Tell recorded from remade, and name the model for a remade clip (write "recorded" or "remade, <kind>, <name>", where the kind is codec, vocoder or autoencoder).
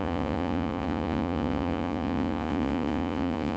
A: remade, vocoder, Vocos